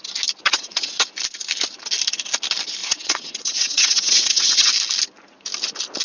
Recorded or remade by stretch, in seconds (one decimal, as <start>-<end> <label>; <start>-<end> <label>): 0.0-0.4 recorded; 0.4-1.0 remade; 1.0-2.8 recorded; 2.8-4.7 remade; 4.7-6.0 recorded